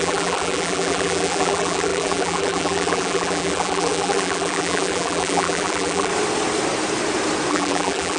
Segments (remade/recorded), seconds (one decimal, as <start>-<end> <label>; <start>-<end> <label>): 0.0-6.1 remade; 6.1-7.5 recorded; 7.5-8.2 remade